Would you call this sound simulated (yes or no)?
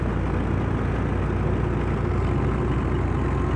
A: no